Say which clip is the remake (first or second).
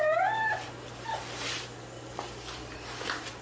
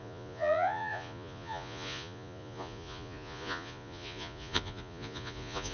second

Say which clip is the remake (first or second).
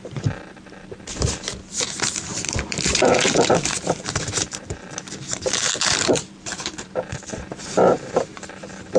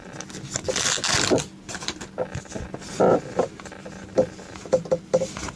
first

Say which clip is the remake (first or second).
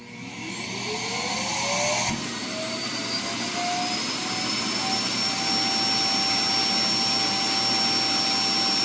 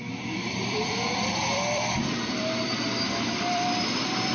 second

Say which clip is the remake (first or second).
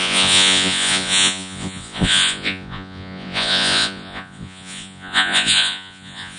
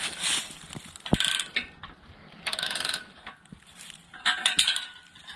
first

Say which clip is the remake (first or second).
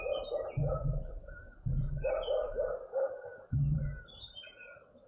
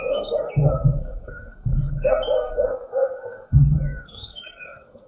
second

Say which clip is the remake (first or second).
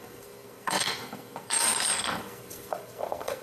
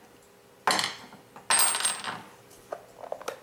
first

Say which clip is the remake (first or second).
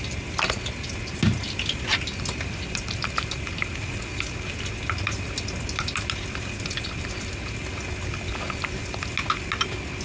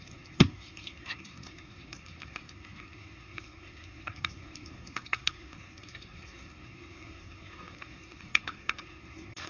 second